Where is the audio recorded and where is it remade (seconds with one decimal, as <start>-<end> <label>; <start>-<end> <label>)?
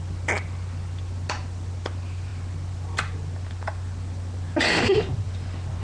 0.0-5.8 recorded